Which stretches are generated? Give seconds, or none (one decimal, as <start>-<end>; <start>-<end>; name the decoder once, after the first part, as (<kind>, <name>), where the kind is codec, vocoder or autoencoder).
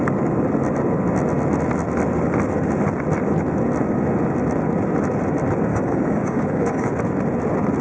5.7-6.9 (codec, DAC)